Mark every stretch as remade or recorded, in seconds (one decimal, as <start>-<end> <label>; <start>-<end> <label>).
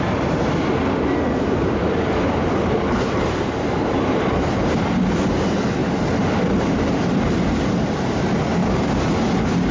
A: 0.0-1.8 recorded; 1.8-5.3 remade; 5.3-5.8 recorded; 5.8-7.4 remade; 7.4-8.6 recorded; 8.6-9.7 remade